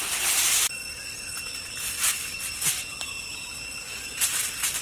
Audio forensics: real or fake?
real